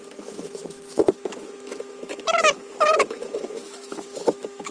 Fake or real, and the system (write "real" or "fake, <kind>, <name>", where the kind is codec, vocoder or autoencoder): fake, autoencoder, DAC-VAE